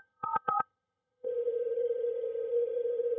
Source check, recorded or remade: remade